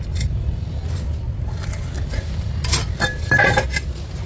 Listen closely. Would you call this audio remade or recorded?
recorded